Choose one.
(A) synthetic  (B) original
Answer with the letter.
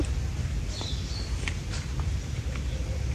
B